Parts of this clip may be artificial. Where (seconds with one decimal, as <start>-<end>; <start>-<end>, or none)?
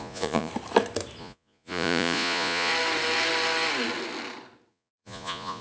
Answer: 0.0-0.5; 1.2-2.7; 4.7-5.6